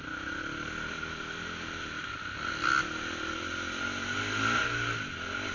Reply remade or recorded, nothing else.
recorded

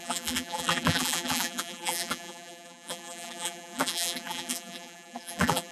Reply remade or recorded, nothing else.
remade